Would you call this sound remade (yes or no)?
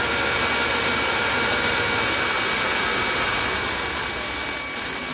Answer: no